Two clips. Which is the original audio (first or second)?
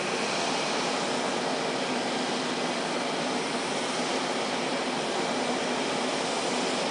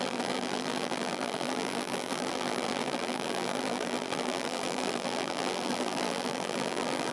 first